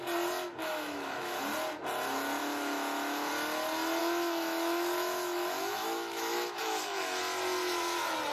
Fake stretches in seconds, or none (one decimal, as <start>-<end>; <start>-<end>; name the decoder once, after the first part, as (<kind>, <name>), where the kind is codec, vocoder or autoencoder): 0.6-1.4 (autoencoder, DAC-VAE); 2.4-3.3; 4.0-7.2